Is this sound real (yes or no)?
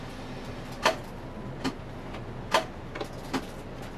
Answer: yes